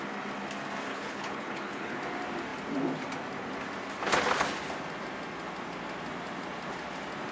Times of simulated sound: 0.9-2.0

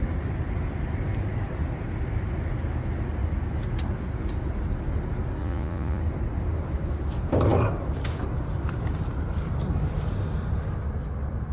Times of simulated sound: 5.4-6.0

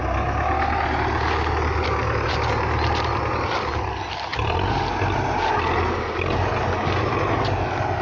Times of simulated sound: none

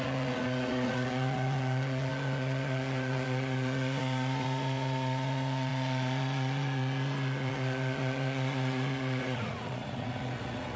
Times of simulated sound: 0.0-10.8